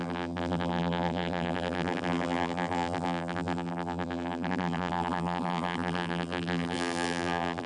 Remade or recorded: remade